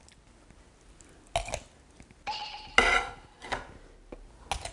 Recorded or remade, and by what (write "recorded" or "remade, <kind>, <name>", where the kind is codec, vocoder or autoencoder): recorded